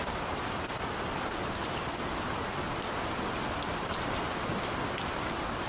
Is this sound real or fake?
real